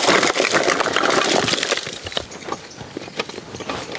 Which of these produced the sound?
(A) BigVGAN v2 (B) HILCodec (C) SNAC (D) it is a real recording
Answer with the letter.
D